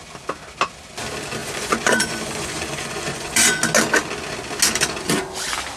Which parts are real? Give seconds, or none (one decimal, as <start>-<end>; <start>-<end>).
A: 0.0-1.4; 3.6-5.8